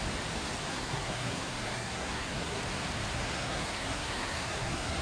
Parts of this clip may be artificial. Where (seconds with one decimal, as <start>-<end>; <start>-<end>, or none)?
0.7-2.6; 3.1-5.0

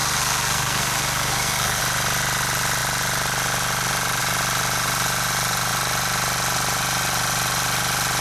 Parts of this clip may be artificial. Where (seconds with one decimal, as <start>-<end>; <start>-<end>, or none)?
0.0-1.8

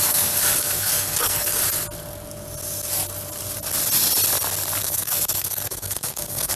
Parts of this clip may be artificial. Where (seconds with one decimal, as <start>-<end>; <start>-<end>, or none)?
0.0-1.6; 4.8-6.6

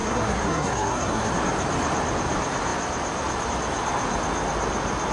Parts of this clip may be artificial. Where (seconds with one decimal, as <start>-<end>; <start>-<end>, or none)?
0.0-1.3

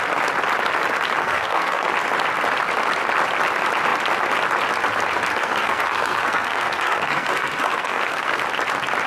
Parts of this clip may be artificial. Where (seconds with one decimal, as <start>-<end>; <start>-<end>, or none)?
1.2-1.9; 5.3-8.4